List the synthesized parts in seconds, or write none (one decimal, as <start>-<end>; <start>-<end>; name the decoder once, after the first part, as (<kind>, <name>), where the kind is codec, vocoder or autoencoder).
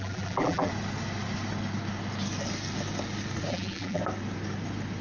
0.0-0.7 (vocoder, BigVGAN v2); 3.5-4.0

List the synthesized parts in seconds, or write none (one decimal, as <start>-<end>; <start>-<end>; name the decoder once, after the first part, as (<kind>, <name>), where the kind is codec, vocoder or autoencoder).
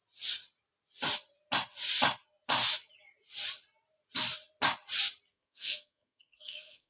5.3-6.9 (codec, SNAC)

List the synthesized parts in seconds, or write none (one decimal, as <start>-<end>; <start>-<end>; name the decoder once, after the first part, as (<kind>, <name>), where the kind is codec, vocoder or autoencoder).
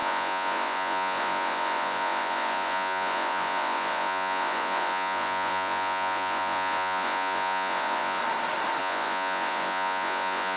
0.0-8.2 (vocoder, Vocos); 8.8-10.6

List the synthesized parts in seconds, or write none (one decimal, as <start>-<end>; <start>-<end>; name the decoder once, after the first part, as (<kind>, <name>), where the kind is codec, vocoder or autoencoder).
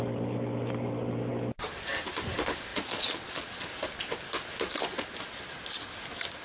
2.7-3.7 (vocoder, Vocos)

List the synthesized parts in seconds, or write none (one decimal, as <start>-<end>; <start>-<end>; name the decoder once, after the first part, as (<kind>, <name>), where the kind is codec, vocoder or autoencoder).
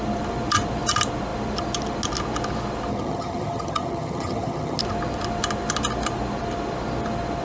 2.9-4.8 (vocoder, HiFi-GAN)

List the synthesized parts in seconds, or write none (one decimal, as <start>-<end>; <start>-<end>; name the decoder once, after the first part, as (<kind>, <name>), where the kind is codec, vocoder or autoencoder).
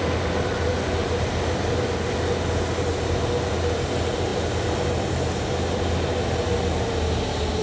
none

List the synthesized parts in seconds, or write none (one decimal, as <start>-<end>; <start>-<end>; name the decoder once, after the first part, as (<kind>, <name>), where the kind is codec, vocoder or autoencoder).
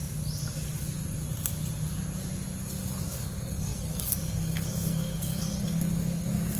3.0-6.6 (codec, SNAC)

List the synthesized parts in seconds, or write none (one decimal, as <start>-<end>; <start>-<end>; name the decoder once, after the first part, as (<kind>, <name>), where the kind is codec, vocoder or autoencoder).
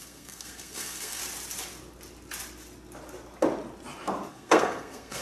0.0-1.2 (codec, SNAC); 4.3-5.2